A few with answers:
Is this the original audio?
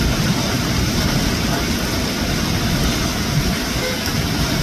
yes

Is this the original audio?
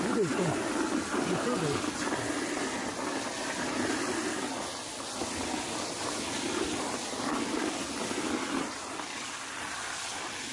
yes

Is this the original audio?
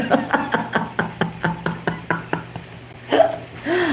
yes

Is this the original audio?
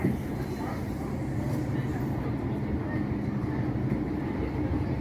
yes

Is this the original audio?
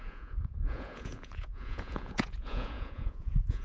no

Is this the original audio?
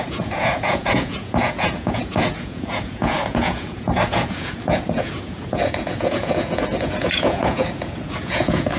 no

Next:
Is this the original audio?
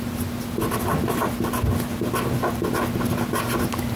yes